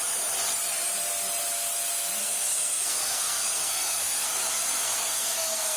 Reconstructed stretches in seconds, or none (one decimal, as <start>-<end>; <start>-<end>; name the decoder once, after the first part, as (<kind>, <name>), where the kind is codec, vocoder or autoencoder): 2.2-5.8 (codec, SNAC)

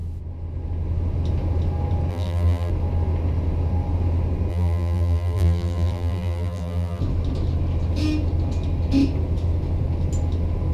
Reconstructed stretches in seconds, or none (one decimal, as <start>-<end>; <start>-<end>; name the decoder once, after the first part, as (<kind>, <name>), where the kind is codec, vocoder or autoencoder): 2.1-2.7 (vocoder, BigVGAN v2); 4.5-7.0

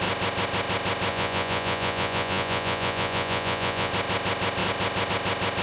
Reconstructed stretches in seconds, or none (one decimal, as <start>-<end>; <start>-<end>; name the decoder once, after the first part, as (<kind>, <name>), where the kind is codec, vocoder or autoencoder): 1.1-3.9 (vocoder, Vocos)

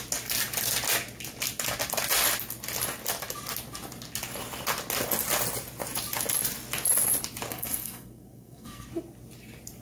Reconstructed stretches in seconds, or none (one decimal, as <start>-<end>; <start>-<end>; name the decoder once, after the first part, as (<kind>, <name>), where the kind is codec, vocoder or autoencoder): 7.5-8.9 (codec, SNAC)